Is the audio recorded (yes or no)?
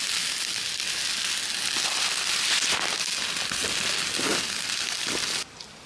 yes